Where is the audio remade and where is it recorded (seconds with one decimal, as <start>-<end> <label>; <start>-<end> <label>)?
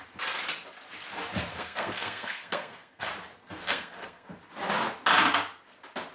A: 0.0-1.5 recorded; 1.5-3.1 remade; 3.1-3.7 recorded; 3.7-4.3 remade; 4.3-6.1 recorded